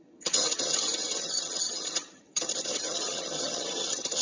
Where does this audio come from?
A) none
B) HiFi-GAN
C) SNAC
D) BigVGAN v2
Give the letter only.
B